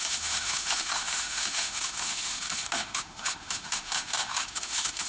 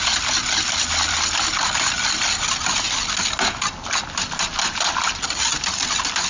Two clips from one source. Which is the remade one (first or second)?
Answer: first